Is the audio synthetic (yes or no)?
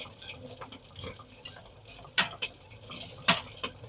no